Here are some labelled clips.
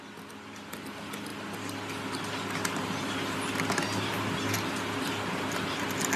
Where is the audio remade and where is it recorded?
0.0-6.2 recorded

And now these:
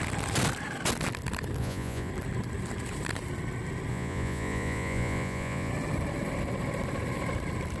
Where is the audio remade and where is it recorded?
0.0-1.6 recorded; 1.6-2.1 remade; 2.1-3.9 recorded; 3.9-5.7 remade; 5.7-7.8 recorded

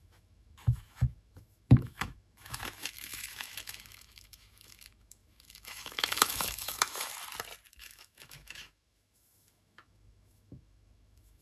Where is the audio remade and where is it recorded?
0.0-7.1 remade; 7.1-7.7 recorded; 7.7-11.4 remade